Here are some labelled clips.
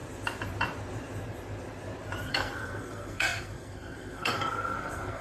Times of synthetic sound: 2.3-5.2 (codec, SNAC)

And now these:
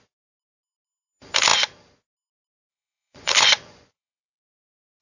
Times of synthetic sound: 2.7-4.4 (vocoder, Vocos)

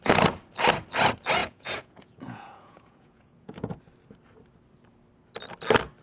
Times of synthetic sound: 1.4-3.8 (vocoder, Vocos)

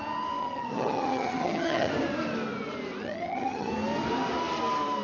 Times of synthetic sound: 0.4-1.9 (vocoder, HiFi-GAN); 3.0-3.7

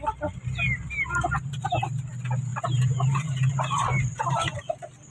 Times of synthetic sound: 2.5-4.0 (vocoder, BigVGAN v2)

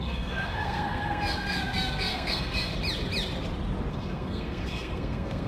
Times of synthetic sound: 0.0-2.7 (codec, SNAC); 3.9-5.5

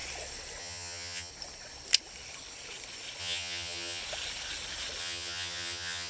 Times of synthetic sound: 0.6-1.3 (vocoder, HiFi-GAN); 3.2-4.0; 5.0-6.1

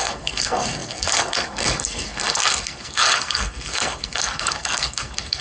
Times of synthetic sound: 0.0-5.4 (codec, SNAC)